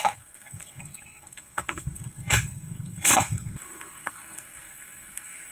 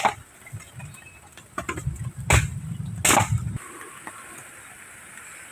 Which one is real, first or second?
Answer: second